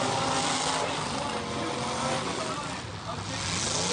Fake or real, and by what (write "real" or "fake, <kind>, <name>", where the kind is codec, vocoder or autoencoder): real